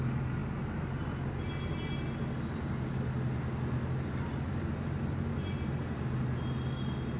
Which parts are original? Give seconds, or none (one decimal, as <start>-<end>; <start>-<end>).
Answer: 0.0-7.2